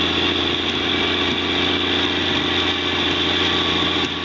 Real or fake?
real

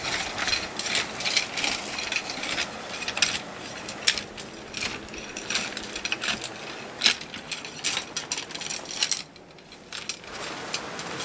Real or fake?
real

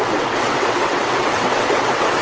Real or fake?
fake